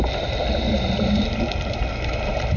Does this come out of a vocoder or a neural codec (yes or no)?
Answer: no